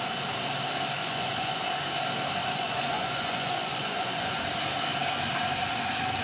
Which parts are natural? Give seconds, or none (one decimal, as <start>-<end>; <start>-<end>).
0.0-1.0; 1.6-2.4; 4.4-6.2